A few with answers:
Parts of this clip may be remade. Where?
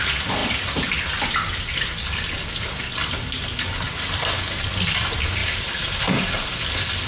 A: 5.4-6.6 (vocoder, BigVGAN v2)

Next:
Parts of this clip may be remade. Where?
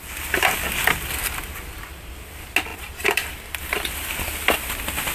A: 2.7-4.1 (vocoder, BigVGAN v2)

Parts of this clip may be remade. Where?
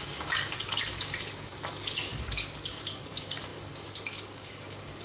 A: 0.0-5.0 (codec, DAC)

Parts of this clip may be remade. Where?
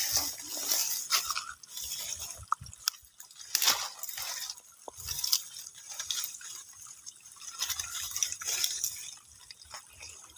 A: 5.7-8.8 (vocoder, BigVGAN v2)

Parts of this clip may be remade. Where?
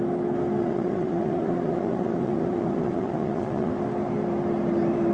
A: 0.6-3.7 (vocoder, Vocos)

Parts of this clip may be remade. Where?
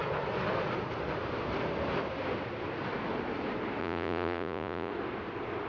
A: 3.8-4.9 (vocoder, Vocos)